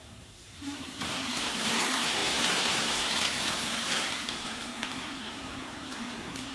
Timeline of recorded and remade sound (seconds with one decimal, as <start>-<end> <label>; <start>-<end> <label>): 0.0-6.5 remade